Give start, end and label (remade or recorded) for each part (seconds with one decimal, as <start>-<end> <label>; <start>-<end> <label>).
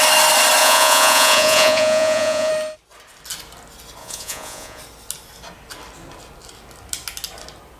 0.0-0.6 recorded; 0.6-2.5 remade; 2.5-4.0 recorded; 4.0-4.8 remade; 4.8-7.8 recorded